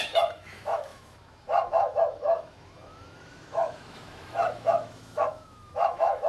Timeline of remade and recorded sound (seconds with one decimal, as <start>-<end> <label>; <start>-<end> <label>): 0.0-6.3 remade